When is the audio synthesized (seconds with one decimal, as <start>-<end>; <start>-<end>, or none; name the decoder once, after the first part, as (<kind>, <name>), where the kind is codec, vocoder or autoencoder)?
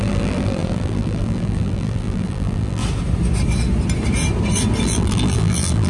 0.0-2.8 (vocoder, BigVGAN v2); 4.8-5.9